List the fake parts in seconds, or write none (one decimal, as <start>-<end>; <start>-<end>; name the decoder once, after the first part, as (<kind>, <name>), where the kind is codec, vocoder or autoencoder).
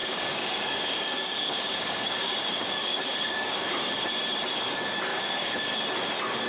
0.0-3.7 (codec, DAC); 5.1-5.7